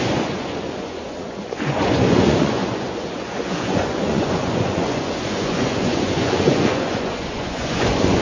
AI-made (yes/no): yes